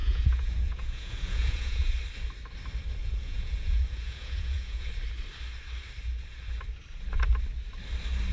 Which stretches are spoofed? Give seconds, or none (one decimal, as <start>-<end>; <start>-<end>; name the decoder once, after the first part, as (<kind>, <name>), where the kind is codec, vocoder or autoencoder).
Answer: 0.0-1.9 (vocoder, Vocos); 3.0-4.9